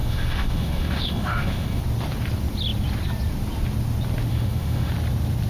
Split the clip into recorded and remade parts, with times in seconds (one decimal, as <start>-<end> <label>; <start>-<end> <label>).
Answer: 0.0-1.8 remade; 1.8-4.3 recorded; 4.3-4.9 remade; 4.9-5.5 recorded